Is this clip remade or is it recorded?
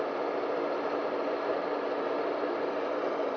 recorded